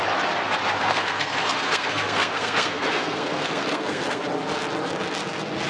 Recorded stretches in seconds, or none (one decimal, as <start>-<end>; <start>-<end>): 0.0-0.8; 4.2-5.7